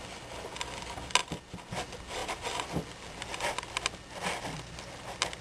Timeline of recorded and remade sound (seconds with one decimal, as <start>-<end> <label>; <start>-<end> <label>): 0.0-5.4 recorded

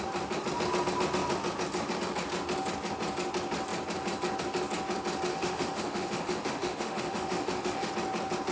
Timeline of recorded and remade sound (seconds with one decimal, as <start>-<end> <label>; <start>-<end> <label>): 0.0-5.3 recorded; 5.3-7.9 remade; 7.9-8.5 recorded